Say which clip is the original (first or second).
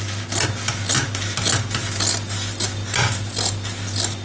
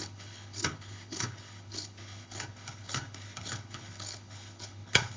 first